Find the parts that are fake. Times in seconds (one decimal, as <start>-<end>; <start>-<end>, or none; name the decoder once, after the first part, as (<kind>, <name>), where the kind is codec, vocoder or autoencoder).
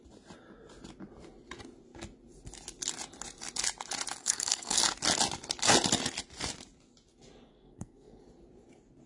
4.2-4.8 (codec, SNAC); 7.5-8.2